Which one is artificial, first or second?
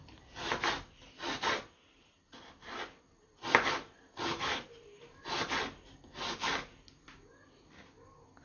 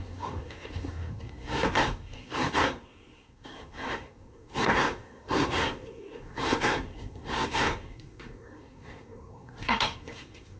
second